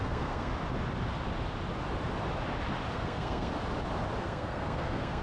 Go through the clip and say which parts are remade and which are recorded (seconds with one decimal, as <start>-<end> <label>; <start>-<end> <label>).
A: 0.0-0.5 remade; 0.5-2.9 recorded; 2.9-3.5 remade; 3.5-4.2 recorded; 4.2-5.2 remade